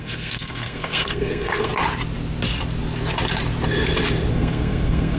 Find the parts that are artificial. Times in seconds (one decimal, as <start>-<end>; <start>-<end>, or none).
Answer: 0.0-1.7; 4.3-5.2